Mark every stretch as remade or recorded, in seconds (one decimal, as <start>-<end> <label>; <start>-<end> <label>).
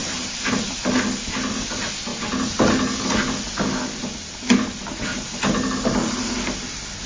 0.0-0.8 remade; 0.8-5.1 recorded; 5.1-5.8 remade; 5.8-7.1 recorded